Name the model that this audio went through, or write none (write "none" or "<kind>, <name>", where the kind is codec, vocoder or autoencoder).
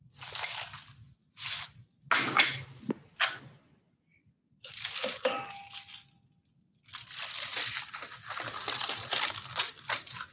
none